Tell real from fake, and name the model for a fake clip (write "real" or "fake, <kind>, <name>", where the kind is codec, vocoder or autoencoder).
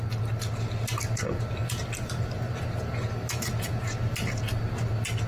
real